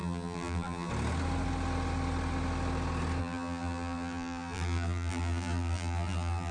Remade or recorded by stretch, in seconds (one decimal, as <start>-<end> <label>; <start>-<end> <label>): 0.0-0.9 remade; 0.9-3.2 recorded; 3.2-6.5 remade